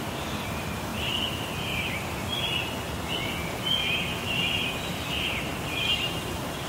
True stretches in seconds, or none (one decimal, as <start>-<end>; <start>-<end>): 0.9-4.9; 5.5-6.1